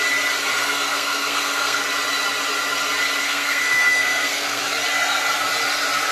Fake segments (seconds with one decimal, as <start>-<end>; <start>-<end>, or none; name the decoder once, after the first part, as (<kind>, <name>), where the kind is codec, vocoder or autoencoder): 0.5-1.8 (codec, SNAC); 3.2-4.6